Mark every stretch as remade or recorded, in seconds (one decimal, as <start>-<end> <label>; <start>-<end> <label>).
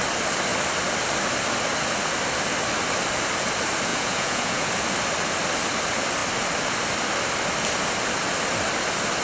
0.0-3.9 recorded; 3.9-4.7 remade; 4.7-9.2 recorded